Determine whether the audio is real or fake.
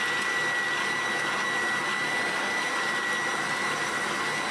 real